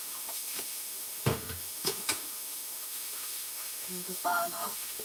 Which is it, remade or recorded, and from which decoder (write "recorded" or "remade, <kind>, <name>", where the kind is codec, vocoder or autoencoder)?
remade, autoencoder, DAC-VAE